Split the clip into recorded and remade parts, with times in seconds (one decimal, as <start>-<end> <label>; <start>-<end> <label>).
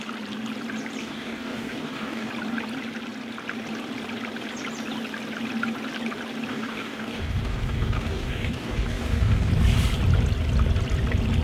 0.0-1.0 recorded; 1.0-2.3 remade; 2.3-6.5 recorded; 6.5-9.5 remade; 9.5-11.4 recorded